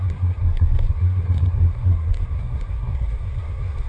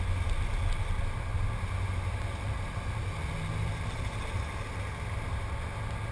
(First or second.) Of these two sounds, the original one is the second